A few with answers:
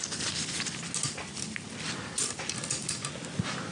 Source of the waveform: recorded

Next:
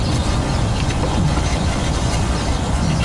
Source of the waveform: remade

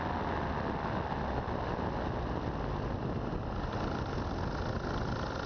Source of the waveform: recorded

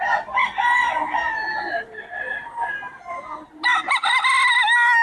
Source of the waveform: recorded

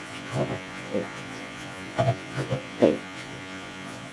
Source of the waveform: remade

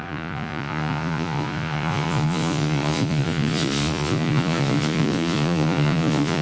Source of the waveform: remade